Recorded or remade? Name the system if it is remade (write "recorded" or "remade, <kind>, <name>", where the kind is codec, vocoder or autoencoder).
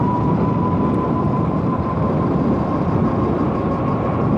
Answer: recorded